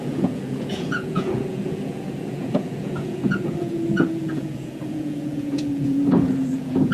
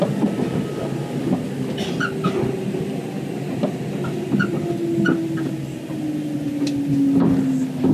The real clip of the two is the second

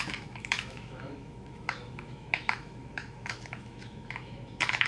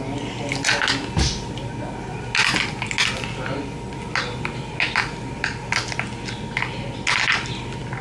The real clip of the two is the second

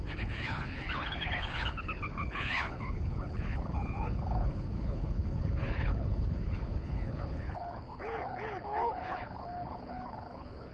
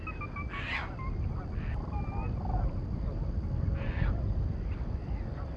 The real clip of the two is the second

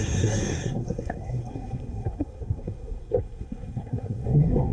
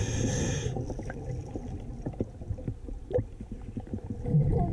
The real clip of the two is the second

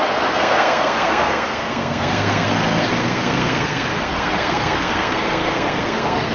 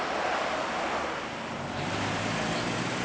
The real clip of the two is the second